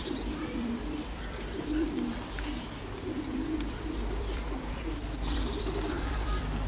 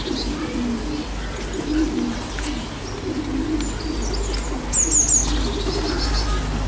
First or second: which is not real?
first